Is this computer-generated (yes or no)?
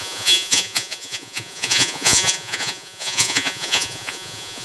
yes